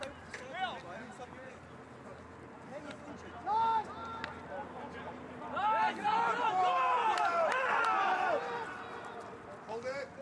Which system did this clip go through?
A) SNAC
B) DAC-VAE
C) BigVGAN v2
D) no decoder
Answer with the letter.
D